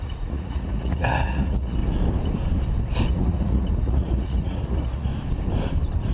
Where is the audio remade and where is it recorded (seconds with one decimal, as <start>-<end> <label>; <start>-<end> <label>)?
0.0-1.8 remade; 1.8-3.1 recorded; 3.1-5.1 remade; 5.1-6.1 recorded